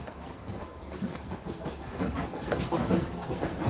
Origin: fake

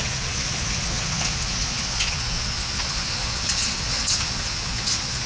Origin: fake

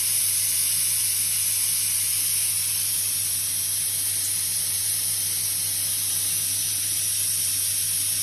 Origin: real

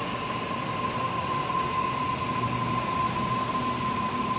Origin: real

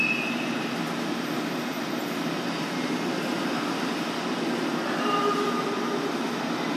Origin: real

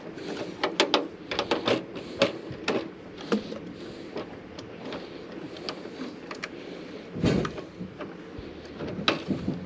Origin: real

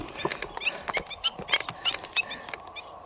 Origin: real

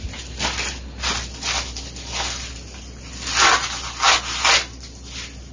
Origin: real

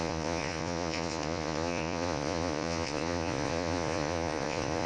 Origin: fake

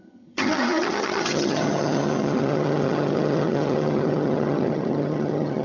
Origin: fake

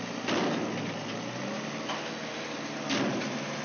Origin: real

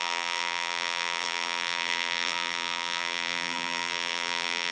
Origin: fake